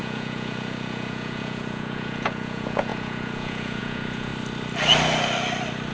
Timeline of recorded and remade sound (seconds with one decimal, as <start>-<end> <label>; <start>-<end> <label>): 0.0-4.3 remade; 4.3-5.9 recorded